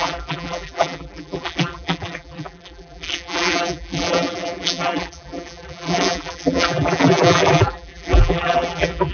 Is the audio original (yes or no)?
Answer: no